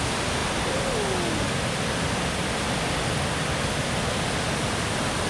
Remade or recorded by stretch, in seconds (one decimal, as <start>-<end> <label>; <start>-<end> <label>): 0.0-5.3 recorded